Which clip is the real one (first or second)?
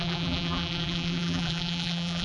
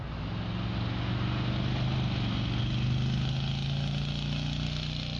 second